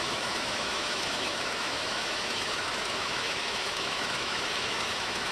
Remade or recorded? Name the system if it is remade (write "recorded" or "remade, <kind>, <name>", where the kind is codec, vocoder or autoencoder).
remade, autoencoder, DAC-VAE